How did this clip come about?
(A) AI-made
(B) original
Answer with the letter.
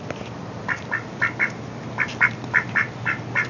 B